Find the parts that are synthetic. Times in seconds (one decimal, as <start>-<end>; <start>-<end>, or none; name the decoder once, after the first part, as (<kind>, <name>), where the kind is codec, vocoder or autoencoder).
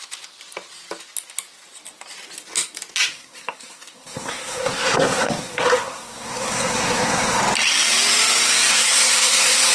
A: 3.1-7.4 (codec, SNAC); 8.7-9.7